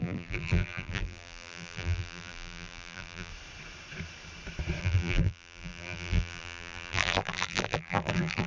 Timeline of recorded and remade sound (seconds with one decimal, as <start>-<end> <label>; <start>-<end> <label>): 0.0-3.3 remade; 3.3-4.8 recorded; 4.8-8.5 remade